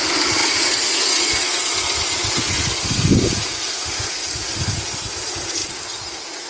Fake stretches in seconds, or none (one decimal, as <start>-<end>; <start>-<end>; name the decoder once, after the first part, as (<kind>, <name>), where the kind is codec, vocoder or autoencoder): none